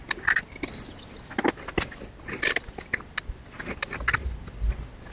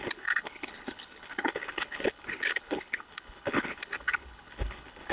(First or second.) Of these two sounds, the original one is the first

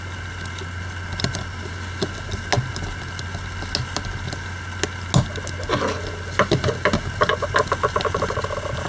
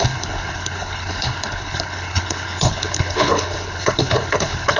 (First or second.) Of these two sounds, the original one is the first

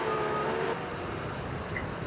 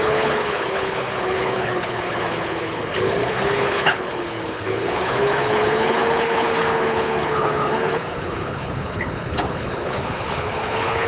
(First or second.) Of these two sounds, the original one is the first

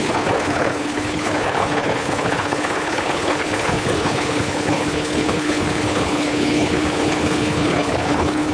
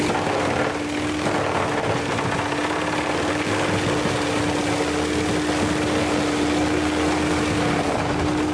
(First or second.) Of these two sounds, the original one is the second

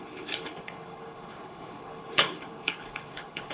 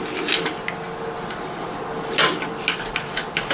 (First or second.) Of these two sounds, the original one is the second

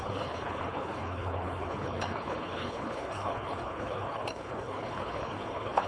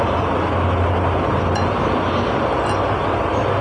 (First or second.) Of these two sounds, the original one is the second